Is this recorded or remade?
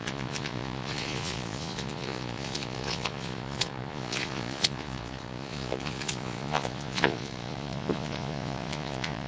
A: remade